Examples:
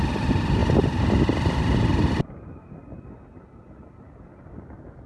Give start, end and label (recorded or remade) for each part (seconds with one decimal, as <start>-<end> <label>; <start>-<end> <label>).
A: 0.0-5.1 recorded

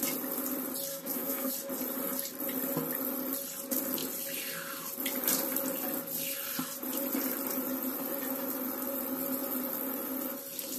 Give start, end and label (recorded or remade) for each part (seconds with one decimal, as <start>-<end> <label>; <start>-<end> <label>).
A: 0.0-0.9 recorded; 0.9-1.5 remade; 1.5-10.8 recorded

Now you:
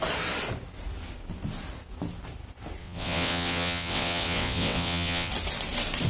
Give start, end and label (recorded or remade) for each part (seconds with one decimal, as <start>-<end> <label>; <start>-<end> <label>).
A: 0.0-2.8 recorded; 2.8-5.3 remade; 5.3-6.1 recorded